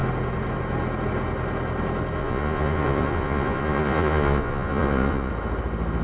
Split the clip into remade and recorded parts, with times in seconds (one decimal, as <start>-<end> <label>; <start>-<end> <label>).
0.0-2.2 recorded; 2.2-5.3 remade; 5.3-6.0 recorded